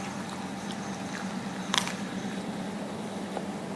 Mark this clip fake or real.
real